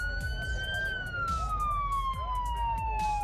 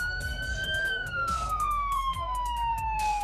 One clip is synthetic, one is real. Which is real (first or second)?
first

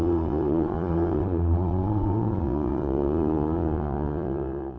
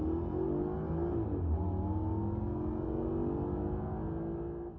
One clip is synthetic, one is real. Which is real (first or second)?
second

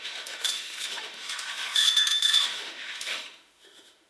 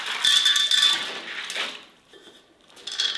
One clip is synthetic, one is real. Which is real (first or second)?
second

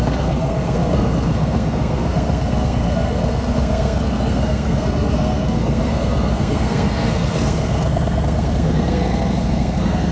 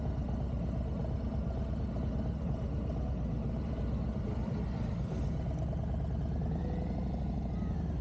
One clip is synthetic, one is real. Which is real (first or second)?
second